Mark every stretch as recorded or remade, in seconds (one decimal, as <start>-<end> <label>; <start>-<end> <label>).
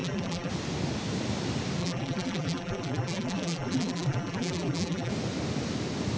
0.0-0.5 remade; 0.5-1.8 recorded; 1.8-5.1 remade; 5.1-6.2 recorded